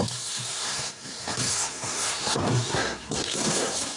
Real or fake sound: fake